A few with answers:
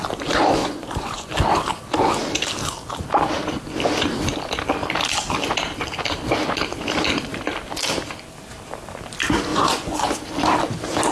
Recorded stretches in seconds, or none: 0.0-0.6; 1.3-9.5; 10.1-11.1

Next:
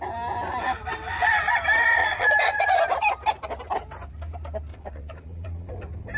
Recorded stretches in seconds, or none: 0.0-2.0; 2.8-4.7; 5.7-6.2

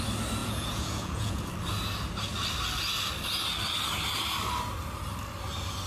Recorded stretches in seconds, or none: 0.0-0.4; 1.5-5.9